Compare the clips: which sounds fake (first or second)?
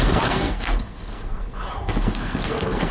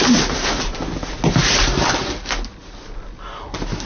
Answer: first